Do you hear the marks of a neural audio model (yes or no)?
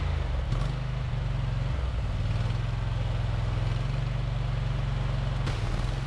no